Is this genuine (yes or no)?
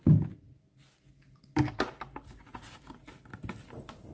yes